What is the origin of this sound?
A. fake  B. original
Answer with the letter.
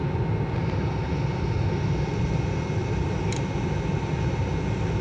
B